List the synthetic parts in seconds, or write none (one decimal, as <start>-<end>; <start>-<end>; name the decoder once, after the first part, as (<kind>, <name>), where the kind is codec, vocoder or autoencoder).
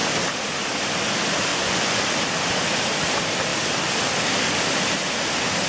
1.5-2.0 (vocoder, Vocos)